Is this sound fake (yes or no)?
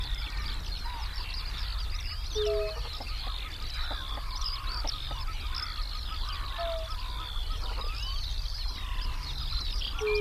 no